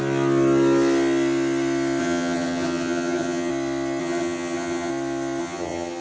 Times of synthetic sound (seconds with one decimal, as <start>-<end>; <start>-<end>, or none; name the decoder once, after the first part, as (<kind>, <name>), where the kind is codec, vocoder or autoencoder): 2.0-3.5 (vocoder, HiFi-GAN); 4.0-4.9; 5.4-6.0